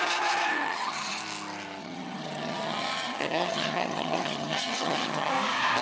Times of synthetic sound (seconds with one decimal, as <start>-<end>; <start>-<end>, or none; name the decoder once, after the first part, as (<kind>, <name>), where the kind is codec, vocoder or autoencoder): 0.5-1.2 (vocoder, HiFi-GAN); 1.8-5.3